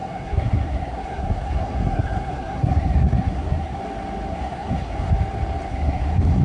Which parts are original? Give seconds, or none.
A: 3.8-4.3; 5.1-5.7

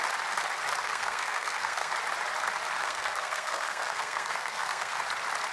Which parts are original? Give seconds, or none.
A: 0.0-0.8; 1.9-2.8; 5.0-5.5

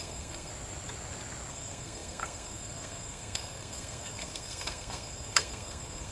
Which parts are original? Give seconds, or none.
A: 0.5-1.5

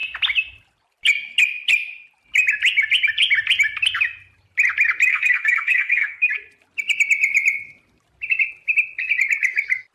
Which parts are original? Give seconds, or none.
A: 0.0-5.1; 6.3-9.9

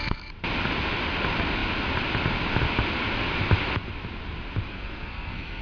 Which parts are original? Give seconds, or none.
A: 0.0-4.7

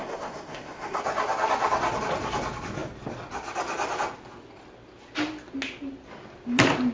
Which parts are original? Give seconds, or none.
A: 1.0-6.9

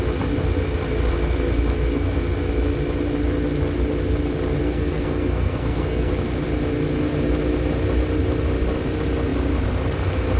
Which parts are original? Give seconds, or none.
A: 0.0-4.6; 6.1-10.4